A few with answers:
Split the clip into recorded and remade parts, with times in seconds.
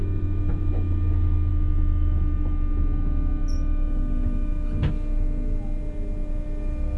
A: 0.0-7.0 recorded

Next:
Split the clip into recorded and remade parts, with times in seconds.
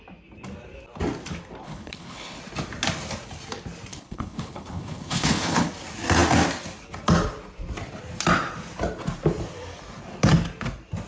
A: 0.0-1.6 recorded; 1.6-2.4 remade; 2.4-3.9 recorded; 3.9-5.7 remade; 5.7-11.1 recorded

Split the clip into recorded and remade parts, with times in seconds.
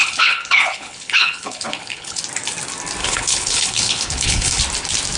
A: 0.0-2.2 remade; 2.2-3.0 recorded; 3.0-4.6 remade; 4.6-5.2 recorded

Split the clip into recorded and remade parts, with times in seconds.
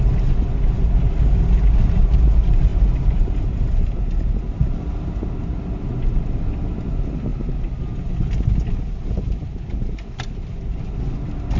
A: 0.0-11.6 recorded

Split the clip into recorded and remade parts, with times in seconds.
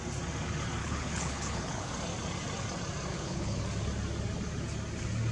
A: 0.0-0.8 recorded; 0.8-1.9 remade; 1.9-3.1 recorded; 3.1-3.6 remade; 3.6-5.3 recorded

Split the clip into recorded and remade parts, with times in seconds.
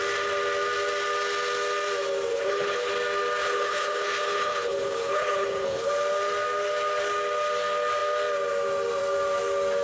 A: 0.0-2.3 recorded; 2.3-2.9 remade; 2.9-3.4 recorded; 3.4-5.9 remade; 5.9-9.8 recorded